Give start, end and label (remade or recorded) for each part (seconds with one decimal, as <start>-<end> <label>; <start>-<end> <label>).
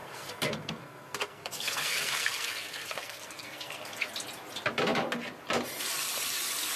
0.0-4.1 remade; 4.1-6.8 recorded